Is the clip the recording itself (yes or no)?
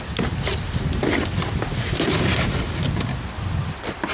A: yes